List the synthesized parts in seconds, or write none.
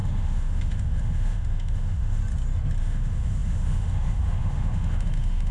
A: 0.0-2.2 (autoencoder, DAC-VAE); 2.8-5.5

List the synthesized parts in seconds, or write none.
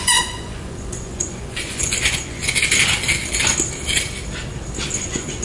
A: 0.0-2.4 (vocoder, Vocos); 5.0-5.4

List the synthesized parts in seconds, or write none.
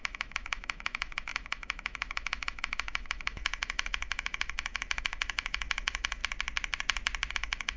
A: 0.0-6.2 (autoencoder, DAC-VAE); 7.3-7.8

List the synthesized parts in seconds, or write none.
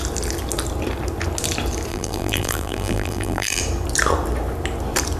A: 1.9-3.6 (vocoder, BigVGAN v2)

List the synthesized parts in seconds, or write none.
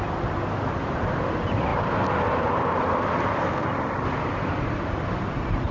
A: none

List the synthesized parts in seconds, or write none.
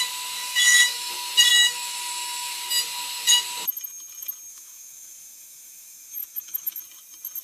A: 0.4-1.1 (autoencoder, DAC-VAE); 1.5-2.6; 4.5-6.8